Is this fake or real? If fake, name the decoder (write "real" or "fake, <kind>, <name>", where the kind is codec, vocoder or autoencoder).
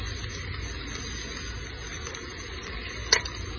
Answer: real